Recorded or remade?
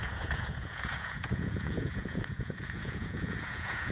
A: remade